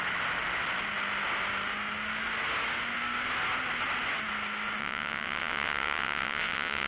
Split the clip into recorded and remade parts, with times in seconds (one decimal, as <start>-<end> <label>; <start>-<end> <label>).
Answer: 0.0-4.8 recorded; 4.8-6.9 remade